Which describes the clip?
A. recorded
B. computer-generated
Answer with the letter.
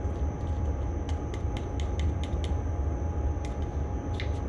A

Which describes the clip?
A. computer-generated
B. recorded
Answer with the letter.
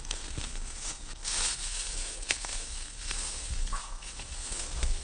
A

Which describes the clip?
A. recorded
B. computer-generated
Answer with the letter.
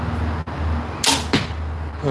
A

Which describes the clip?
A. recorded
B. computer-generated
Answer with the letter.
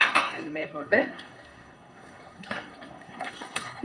B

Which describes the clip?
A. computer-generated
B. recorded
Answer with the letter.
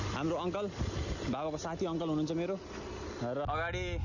B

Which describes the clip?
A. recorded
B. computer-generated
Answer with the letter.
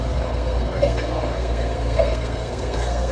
B